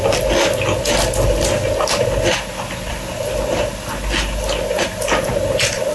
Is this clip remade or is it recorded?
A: recorded